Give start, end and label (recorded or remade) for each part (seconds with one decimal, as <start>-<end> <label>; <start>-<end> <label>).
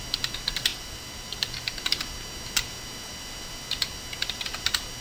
0.0-0.7 recorded; 0.7-1.8 remade; 1.8-5.0 recorded